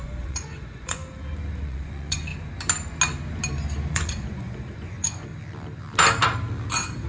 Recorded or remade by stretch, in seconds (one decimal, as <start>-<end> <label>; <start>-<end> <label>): 0.0-1.0 remade; 1.0-1.6 recorded; 1.6-2.3 remade; 2.3-3.9 recorded; 3.9-5.3 remade; 5.3-7.1 recorded